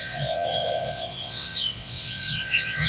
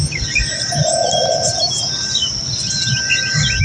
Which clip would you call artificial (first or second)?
first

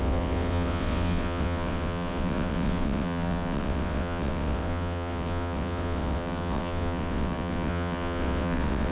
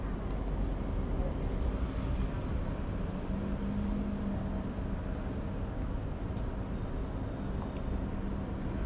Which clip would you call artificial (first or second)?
first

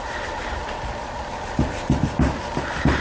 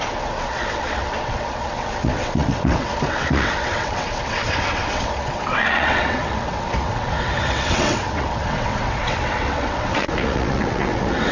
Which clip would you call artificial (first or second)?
second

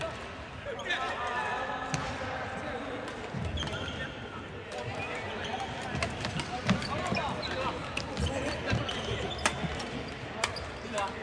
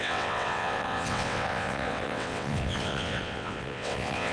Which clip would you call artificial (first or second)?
second